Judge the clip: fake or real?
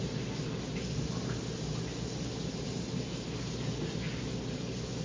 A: real